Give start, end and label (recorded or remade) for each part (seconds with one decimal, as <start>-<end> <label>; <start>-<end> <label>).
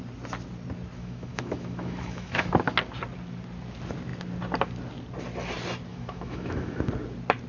0.0-1.0 recorded; 1.0-2.5 remade; 2.5-5.9 recorded; 5.9-6.9 remade; 6.9-7.5 recorded